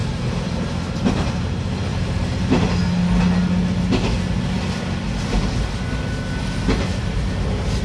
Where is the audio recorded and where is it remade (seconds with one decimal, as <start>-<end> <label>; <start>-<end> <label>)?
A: 0.0-1.3 remade; 1.3-1.9 recorded; 1.9-2.6 remade; 2.6-6.6 recorded; 6.6-7.1 remade; 7.1-7.8 recorded